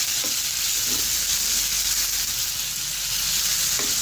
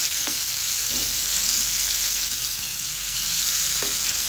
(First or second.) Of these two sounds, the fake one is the second